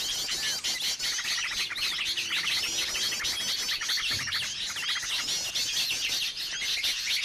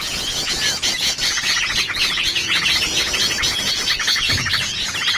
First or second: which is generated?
second